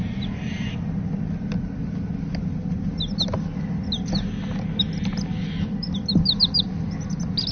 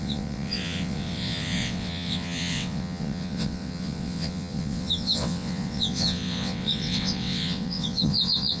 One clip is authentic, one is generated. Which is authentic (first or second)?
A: first